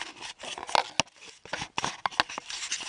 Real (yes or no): yes